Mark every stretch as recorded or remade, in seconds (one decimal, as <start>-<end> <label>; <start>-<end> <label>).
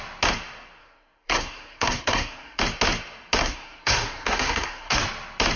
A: 0.0-0.8 recorded; 0.8-2.6 remade; 2.6-3.4 recorded; 3.4-5.0 remade; 5.0-5.6 recorded